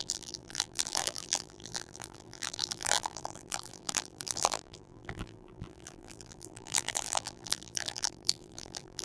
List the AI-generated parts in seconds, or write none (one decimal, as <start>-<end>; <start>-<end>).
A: 0.0-9.0